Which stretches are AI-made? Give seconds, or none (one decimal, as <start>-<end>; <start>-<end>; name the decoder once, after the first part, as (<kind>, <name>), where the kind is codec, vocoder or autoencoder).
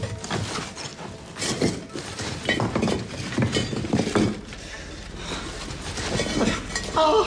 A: none